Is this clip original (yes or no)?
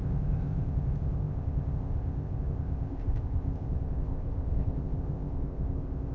no